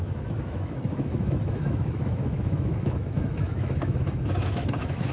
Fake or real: fake